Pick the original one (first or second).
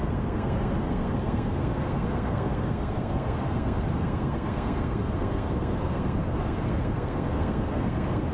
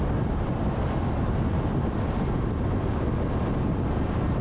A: second